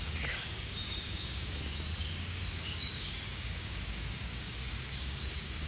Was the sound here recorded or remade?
remade